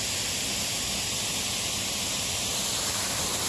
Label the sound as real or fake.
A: real